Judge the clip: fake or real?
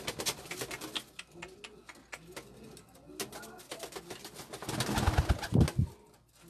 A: real